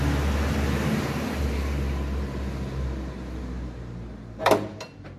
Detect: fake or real real